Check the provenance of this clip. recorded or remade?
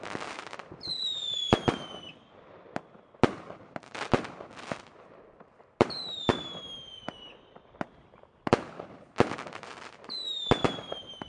recorded